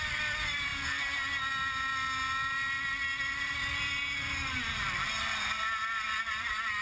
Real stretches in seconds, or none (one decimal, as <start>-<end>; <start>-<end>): 0.7-3.2

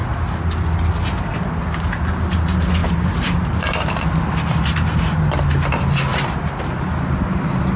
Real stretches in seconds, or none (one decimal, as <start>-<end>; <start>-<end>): 0.0-2.8; 3.9-7.8

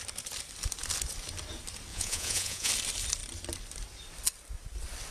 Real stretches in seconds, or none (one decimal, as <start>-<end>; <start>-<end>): 0.0-1.9; 2.7-5.1